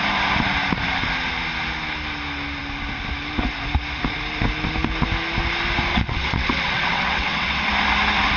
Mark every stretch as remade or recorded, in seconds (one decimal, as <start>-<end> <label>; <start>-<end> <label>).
0.0-5.9 recorded; 5.9-7.7 remade; 7.7-8.4 recorded